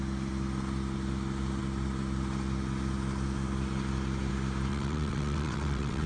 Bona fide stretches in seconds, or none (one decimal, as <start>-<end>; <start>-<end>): 0.0-4.7